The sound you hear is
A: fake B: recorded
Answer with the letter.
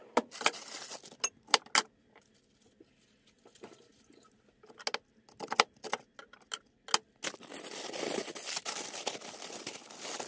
B